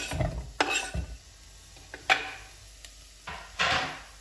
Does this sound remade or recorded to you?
recorded